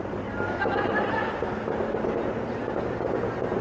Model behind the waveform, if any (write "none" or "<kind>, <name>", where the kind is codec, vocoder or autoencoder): none